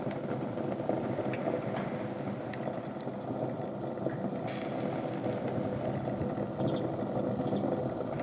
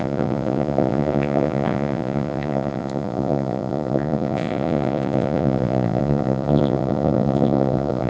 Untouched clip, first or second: first